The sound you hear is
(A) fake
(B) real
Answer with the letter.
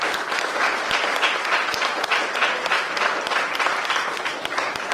B